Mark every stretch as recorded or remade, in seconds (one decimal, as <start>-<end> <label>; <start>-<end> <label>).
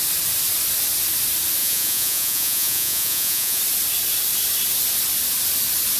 0.0-1.6 recorded; 1.6-3.6 remade; 3.6-6.0 recorded